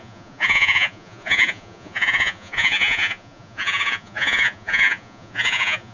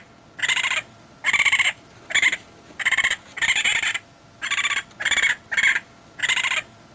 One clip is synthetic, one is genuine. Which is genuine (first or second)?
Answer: second